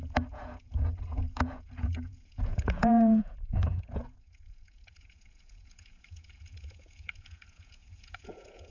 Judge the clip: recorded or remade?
remade